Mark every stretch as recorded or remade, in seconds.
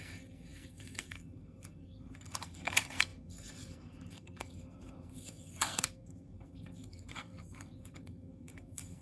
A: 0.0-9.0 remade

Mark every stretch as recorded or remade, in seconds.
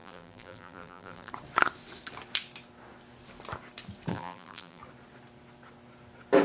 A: 0.0-1.3 remade; 1.3-4.1 recorded; 4.1-4.8 remade; 4.8-6.4 recorded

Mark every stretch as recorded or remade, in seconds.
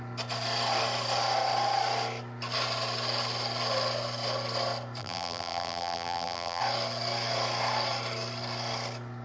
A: 0.0-5.0 recorded; 5.0-6.6 remade; 6.6-9.2 recorded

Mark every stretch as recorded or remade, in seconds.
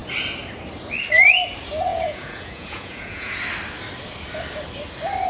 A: 0.0-1.9 recorded; 1.9-3.4 remade; 3.4-5.3 recorded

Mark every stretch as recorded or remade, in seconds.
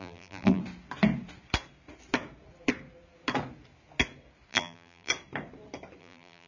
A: 0.0-0.6 remade; 0.6-4.5 recorded; 4.5-5.1 remade; 5.1-6.0 recorded; 6.0-6.5 remade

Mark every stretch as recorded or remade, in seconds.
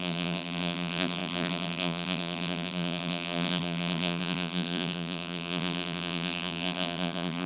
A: 0.0-7.5 remade